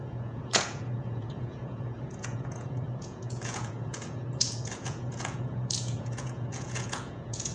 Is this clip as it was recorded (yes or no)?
no